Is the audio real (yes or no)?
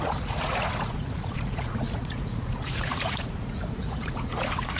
no